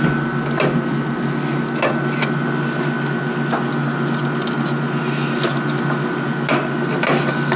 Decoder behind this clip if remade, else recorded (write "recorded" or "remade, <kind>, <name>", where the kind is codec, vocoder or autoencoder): recorded